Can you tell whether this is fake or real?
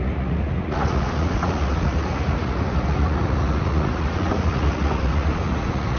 fake